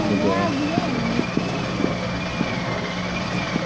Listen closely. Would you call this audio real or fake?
real